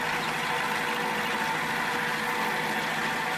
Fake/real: real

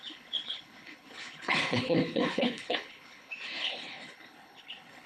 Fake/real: fake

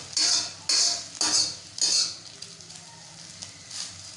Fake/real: real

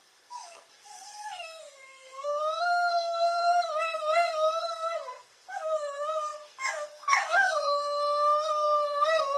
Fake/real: fake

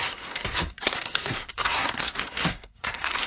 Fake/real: fake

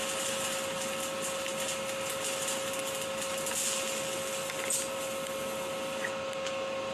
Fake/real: real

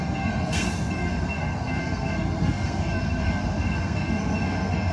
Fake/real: fake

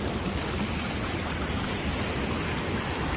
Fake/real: real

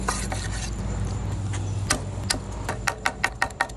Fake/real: real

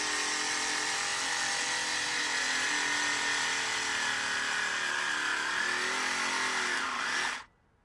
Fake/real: real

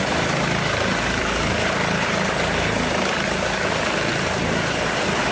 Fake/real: real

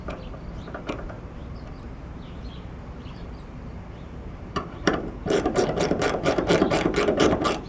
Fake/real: fake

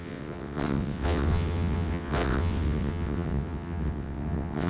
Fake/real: fake